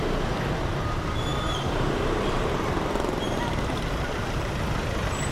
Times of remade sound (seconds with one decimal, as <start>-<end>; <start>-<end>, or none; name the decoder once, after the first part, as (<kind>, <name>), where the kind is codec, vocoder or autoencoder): 1.3-4.5 (vocoder, BigVGAN v2)